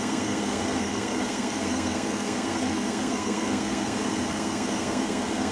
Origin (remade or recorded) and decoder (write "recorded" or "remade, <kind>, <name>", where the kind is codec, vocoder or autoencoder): remade, codec, SNAC